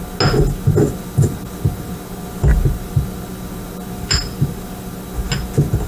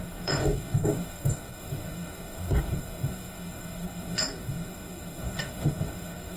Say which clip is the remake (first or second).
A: second